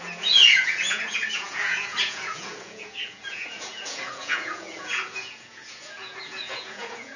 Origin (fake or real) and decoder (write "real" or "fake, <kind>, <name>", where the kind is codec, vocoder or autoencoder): fake, vocoder, Vocos